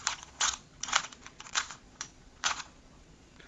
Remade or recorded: remade